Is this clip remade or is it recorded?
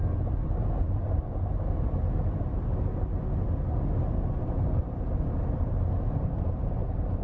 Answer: recorded